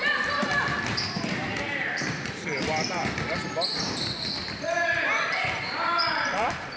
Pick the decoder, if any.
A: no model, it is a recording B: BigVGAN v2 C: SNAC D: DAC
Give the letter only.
B